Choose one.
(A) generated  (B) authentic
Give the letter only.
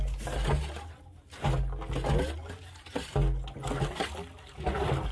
B